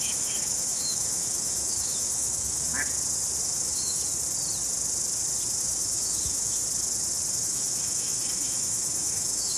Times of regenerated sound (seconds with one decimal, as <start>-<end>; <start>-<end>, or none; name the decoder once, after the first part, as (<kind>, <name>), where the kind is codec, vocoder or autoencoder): 0.0-2.7 (autoencoder, DAC-VAE); 3.4-4.0; 5.6-6.6; 7.3-9.6